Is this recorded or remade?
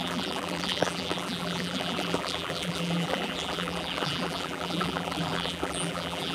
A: remade